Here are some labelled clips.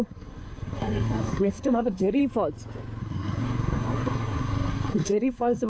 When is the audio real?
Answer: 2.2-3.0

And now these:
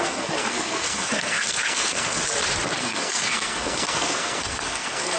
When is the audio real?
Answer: 2.2-2.8

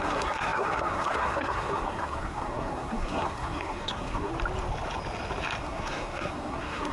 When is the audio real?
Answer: 4.3-5.6

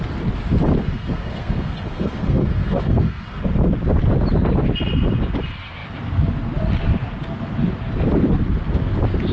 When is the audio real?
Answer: 0.0-0.8; 3.4-9.3